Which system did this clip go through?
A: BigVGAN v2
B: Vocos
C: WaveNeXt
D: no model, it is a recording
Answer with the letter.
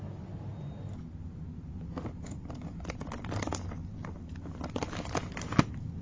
D